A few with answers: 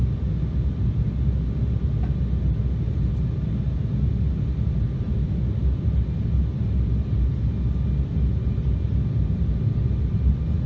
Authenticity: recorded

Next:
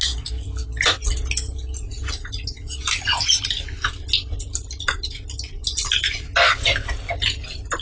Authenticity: recorded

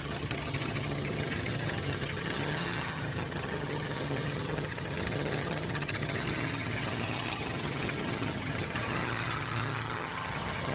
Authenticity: remade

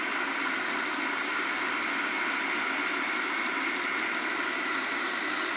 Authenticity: recorded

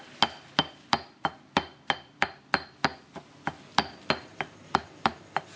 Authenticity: recorded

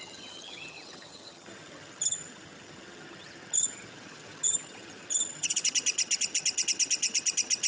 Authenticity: remade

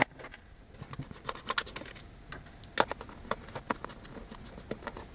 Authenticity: recorded